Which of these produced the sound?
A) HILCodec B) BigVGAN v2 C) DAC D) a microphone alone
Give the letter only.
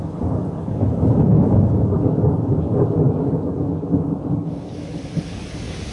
C